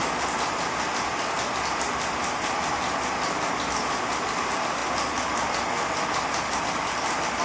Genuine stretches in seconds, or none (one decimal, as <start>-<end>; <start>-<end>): 0.0-7.4